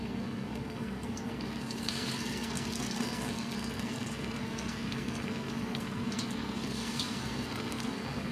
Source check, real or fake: fake